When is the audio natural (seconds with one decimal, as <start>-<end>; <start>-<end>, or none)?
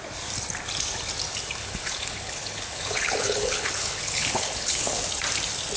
0.0-1.6; 5.1-5.8